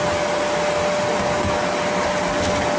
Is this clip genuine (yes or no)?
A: yes